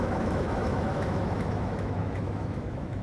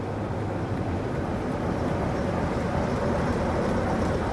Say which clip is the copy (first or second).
first